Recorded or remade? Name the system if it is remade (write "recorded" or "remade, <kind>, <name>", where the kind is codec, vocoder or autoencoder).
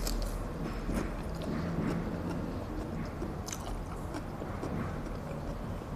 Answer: recorded